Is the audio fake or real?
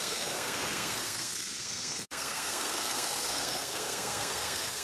fake